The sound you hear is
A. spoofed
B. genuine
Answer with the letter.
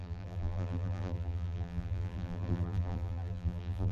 A